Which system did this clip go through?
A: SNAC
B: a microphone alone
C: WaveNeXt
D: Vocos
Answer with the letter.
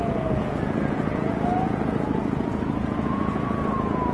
D